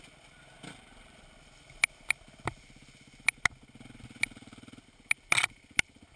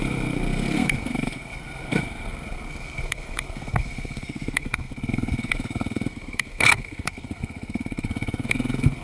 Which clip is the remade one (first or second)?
second